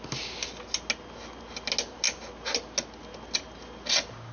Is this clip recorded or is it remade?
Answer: recorded